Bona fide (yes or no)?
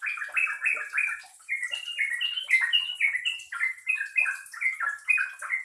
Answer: yes